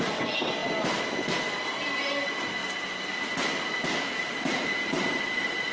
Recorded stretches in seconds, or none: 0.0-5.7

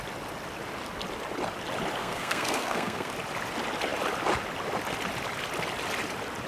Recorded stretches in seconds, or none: 0.0-2.0; 3.1-6.5

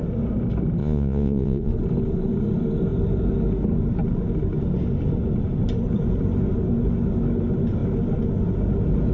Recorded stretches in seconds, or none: 0.0-0.8; 1.7-9.1

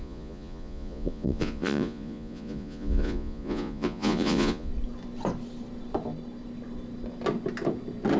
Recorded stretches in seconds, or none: 4.7-8.2

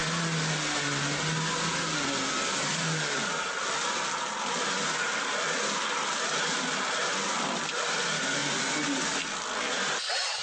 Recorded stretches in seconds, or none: 0.0-10.4

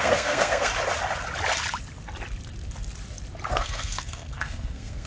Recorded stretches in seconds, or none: 0.7-3.5

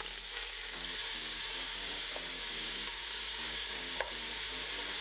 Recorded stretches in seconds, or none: 0.0-1.1; 4.1-5.0